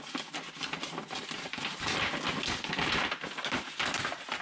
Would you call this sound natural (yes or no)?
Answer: yes